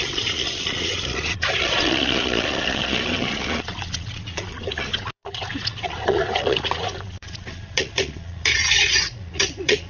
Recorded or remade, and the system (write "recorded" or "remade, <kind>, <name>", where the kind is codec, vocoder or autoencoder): remade, vocoder, Vocos